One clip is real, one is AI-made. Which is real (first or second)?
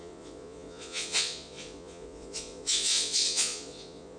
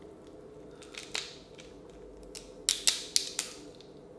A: second